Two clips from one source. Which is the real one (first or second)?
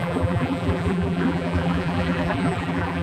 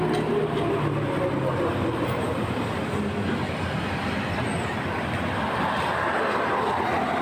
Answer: second